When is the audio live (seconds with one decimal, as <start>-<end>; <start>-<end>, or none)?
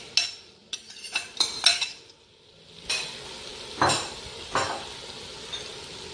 0.0-6.1